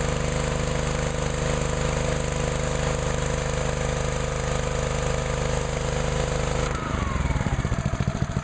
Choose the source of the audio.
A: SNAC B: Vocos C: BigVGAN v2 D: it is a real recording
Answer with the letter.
C